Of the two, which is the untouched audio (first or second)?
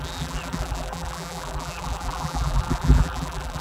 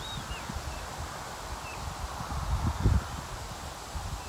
second